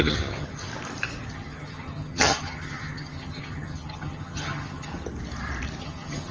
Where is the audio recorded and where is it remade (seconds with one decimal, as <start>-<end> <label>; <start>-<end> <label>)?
0.0-0.7 remade; 0.7-1.3 recorded; 1.3-4.9 remade; 4.9-5.8 recorded; 5.8-6.3 remade